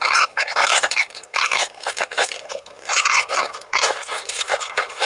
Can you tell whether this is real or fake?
fake